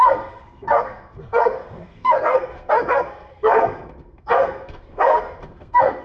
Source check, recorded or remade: remade